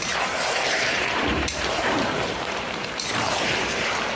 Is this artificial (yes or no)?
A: yes